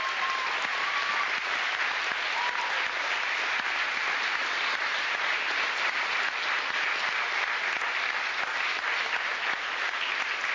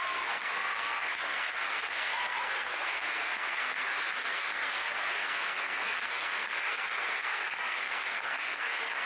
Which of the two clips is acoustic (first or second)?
first